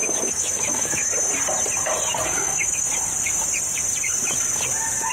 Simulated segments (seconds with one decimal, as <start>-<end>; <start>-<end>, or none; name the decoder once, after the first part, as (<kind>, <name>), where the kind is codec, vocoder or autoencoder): 0.0-1.1 (autoencoder, DAC-VAE); 2.2-2.9